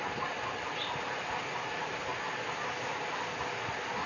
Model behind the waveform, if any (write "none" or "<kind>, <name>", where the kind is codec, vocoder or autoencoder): none